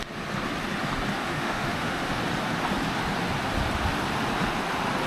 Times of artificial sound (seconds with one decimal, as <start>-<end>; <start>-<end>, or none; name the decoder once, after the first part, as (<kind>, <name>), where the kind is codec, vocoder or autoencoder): 1.2-2.2 (autoencoder, DAC-VAE)